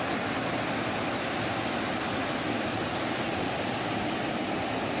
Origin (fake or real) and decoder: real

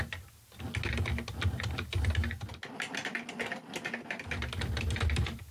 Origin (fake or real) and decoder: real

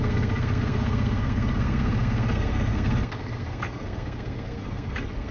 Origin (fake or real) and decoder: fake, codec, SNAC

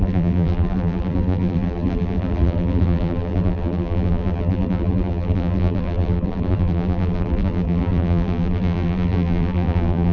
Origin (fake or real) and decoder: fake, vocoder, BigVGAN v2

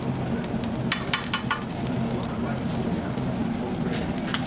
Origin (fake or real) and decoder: real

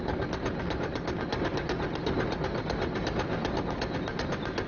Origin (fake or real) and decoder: real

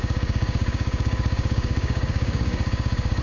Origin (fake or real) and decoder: fake, codec, DAC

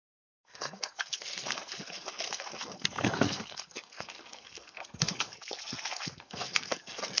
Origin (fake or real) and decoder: fake, codec, SNAC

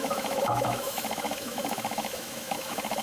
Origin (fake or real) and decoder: fake, autoencoder, DAC-VAE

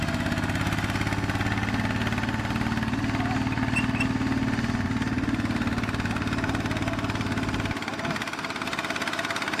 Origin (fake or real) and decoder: real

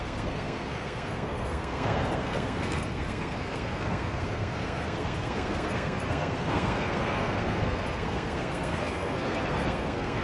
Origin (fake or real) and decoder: fake, codec, SNAC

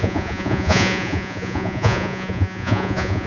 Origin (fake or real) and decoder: fake, vocoder, Vocos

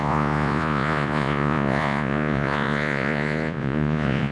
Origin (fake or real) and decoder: fake, vocoder, Vocos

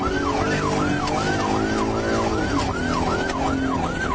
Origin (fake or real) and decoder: real